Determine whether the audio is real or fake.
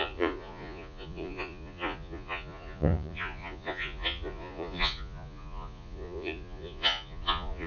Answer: fake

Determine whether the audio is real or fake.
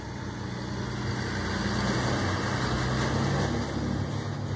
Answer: real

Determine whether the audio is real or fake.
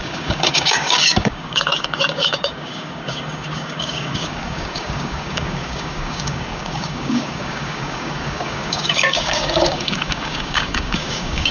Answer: fake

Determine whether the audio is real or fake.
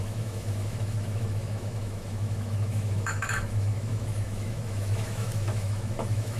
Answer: fake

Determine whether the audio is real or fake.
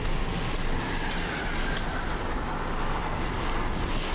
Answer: real